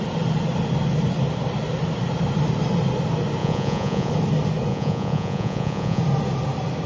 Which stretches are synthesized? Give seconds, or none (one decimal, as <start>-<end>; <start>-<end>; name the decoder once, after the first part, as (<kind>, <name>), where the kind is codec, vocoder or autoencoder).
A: 3.4-4.1 (vocoder, Vocos); 4.7-6.0

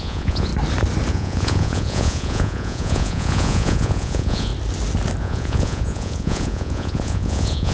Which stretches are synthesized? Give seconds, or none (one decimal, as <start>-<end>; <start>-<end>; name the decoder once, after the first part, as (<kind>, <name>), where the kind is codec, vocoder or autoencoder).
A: 0.0-0.5 (vocoder, Vocos); 1.1-4.5; 5.2-7.7

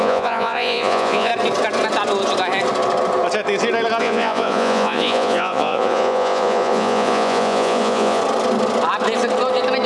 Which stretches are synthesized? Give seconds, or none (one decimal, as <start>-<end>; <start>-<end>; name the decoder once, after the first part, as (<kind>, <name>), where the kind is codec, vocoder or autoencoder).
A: 0.0-1.3 (vocoder, Vocos); 4.0-8.2

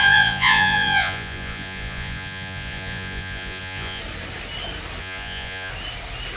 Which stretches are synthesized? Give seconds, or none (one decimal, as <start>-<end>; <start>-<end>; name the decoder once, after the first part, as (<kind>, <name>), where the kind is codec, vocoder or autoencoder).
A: 0.0-4.0 (vocoder, Vocos); 5.0-5.7

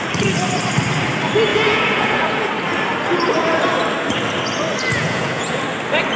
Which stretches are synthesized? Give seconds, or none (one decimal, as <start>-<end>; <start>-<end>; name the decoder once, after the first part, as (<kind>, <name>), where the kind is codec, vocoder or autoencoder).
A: 1.5-2.5 (vocoder, Vocos); 4.9-5.6

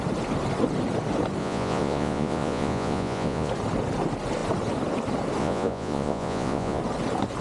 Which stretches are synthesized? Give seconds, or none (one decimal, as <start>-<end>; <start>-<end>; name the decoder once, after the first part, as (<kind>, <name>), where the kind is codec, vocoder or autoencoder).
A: 1.4-3.5 (vocoder, Vocos); 5.4-6.8